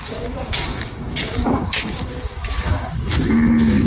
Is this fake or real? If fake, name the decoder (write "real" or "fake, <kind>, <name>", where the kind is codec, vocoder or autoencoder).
fake, codec, DAC